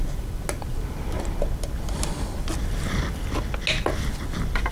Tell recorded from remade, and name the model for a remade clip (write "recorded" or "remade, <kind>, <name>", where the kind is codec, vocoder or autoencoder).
recorded